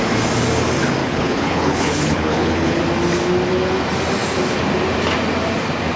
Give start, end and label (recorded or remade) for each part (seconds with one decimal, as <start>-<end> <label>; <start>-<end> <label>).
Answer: 0.0-1.0 recorded; 1.0-2.8 remade; 2.8-6.0 recorded